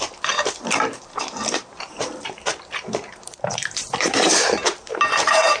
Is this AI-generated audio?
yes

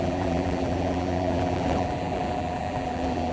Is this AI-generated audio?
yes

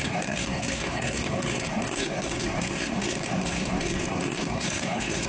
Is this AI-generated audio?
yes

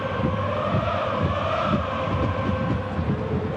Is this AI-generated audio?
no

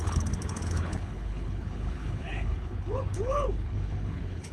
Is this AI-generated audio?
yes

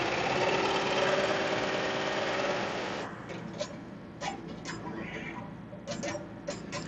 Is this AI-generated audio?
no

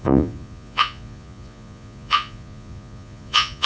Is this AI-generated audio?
yes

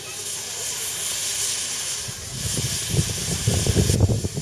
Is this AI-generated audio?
no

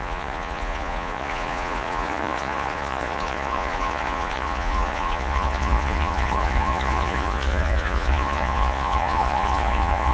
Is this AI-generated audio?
yes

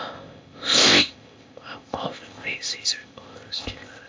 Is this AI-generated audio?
yes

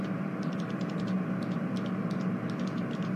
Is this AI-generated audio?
yes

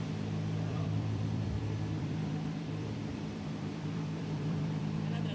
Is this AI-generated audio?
yes